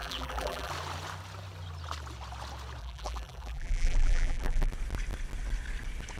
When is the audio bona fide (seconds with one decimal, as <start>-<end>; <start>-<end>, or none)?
0.7-2.8; 4.7-6.2

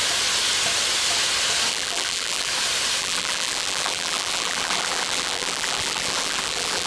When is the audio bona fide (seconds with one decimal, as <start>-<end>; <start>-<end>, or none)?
0.0-1.7; 2.5-3.0